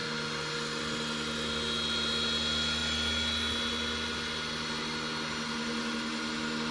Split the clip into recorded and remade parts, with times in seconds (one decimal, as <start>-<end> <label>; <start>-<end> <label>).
0.0-6.7 recorded